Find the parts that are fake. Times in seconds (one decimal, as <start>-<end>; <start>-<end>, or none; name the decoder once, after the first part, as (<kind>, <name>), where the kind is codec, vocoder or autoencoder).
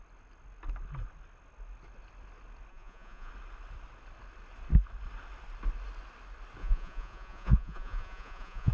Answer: 2.7-3.3 (vocoder, Vocos); 6.6-8.7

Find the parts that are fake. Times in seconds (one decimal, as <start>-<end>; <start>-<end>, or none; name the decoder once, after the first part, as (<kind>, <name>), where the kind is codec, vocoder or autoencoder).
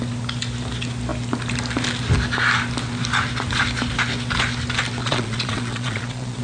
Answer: 5.0-6.4 (vocoder, Vocos)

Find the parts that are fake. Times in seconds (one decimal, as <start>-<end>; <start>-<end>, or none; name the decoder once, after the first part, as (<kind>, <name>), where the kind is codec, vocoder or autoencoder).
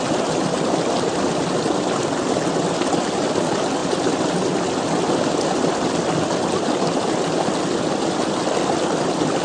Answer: none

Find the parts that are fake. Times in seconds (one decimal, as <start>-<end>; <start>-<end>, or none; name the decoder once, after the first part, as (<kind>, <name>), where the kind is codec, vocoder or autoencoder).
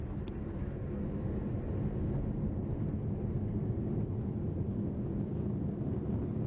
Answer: none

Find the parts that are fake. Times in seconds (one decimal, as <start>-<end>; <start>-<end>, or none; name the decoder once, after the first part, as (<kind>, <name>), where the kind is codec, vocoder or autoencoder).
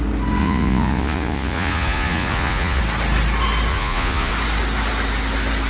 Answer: 0.4-2.8 (vocoder, Vocos); 3.7-4.3